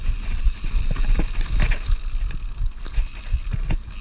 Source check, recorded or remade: recorded